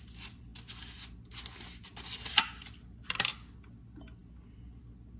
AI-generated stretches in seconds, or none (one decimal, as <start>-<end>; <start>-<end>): none